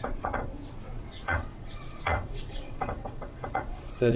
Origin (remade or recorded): remade